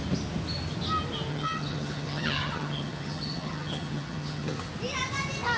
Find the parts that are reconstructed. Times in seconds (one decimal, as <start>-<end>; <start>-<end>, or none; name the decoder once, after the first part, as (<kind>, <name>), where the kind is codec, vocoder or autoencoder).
1.3-4.7 (vocoder, HiFi-GAN)